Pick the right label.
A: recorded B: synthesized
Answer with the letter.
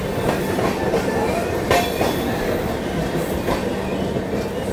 A